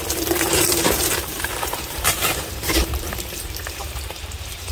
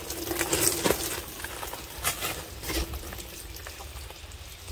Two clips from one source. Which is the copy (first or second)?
first